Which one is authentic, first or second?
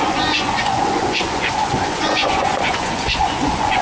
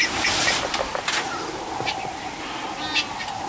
second